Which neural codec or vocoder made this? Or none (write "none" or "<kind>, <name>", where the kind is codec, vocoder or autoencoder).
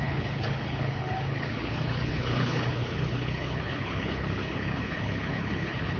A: codec, HILCodec